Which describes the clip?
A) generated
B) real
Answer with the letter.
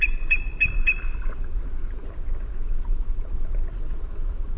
B